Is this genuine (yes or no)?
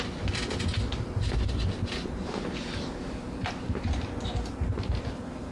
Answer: yes